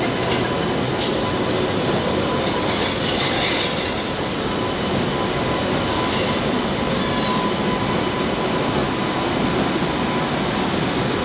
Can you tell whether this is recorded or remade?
recorded